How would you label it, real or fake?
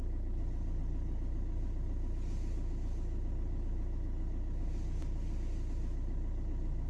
real